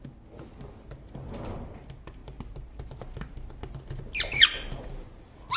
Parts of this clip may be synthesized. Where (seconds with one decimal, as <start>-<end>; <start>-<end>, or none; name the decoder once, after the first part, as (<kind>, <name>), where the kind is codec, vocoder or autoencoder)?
none